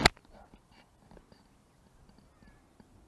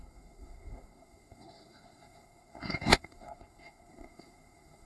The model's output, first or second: second